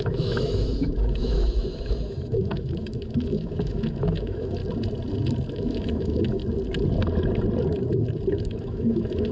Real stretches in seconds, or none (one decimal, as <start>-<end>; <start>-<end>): 4.6-5.5; 6.4-8.3